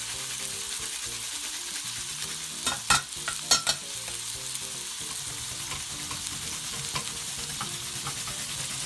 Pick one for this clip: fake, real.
real